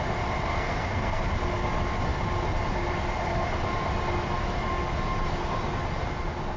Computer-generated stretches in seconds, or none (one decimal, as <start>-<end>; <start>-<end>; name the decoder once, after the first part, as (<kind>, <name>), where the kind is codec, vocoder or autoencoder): 0.5-1.2 (codec, SNAC)